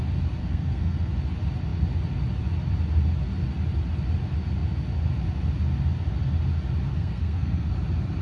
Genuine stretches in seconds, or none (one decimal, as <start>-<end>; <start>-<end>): 0.0-0.4; 1.1-6.9; 7.7-8.2